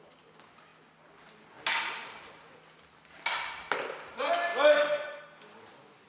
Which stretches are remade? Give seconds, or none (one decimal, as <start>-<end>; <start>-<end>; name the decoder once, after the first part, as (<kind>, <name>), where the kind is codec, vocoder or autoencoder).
none